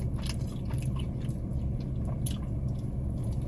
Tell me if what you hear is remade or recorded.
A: recorded